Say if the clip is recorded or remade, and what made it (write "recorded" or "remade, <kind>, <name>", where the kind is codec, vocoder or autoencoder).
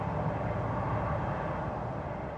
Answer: recorded